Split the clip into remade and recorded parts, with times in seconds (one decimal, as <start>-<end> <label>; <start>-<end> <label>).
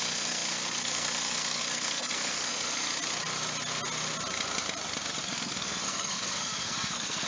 0.0-2.9 remade; 2.9-5.2 recorded; 5.2-7.3 remade